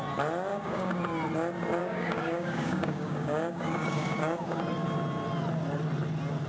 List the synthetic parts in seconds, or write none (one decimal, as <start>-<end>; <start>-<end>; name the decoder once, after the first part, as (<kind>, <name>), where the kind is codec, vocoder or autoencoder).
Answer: 0.5-1.0 (codec, DAC); 1.8-4.6